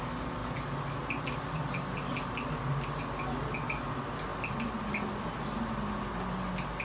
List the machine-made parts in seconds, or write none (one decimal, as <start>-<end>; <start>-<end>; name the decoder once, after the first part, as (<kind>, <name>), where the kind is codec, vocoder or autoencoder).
none